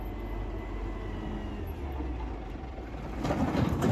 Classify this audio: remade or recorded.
recorded